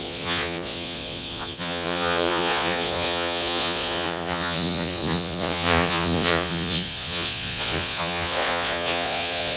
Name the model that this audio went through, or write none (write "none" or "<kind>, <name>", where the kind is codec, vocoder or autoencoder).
vocoder, Vocos